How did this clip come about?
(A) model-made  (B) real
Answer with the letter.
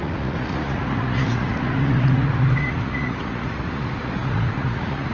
A